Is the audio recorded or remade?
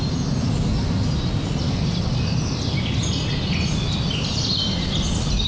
recorded